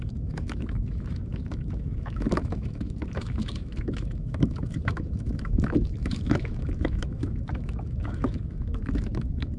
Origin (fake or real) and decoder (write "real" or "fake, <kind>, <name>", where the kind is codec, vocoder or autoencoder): fake, autoencoder, DAC-VAE